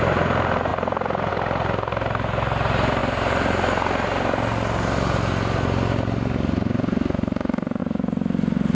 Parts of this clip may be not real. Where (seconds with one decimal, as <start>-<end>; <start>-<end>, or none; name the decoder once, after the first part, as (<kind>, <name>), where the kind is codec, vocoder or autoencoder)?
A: none